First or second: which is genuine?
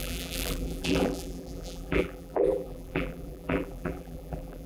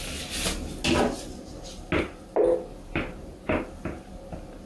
second